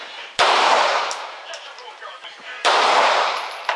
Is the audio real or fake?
fake